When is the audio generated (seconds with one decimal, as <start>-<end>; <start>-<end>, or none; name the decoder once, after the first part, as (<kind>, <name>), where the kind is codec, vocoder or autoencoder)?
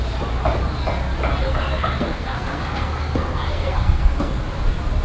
1.4-4.4 (codec, SNAC)